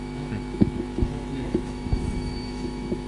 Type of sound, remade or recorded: remade